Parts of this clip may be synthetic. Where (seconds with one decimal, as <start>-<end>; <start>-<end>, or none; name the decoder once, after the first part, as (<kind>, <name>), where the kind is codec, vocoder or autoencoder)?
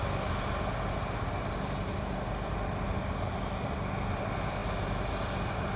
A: none